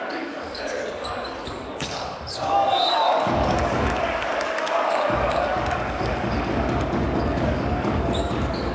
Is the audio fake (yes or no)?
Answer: yes